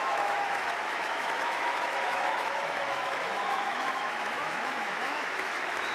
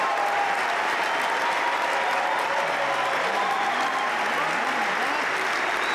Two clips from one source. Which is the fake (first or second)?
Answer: first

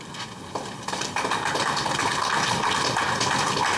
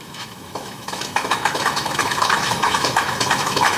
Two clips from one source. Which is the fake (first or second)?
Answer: second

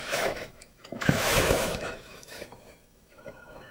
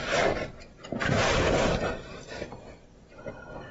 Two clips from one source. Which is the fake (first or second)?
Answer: first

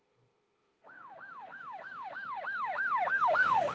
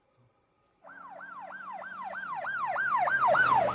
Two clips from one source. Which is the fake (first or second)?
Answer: first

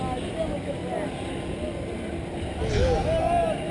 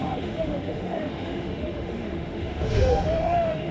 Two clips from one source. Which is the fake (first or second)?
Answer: second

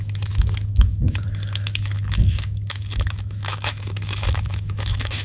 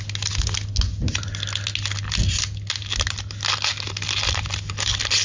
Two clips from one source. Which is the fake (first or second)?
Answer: first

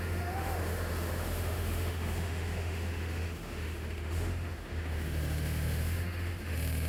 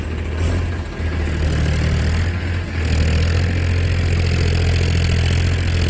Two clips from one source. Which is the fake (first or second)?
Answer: first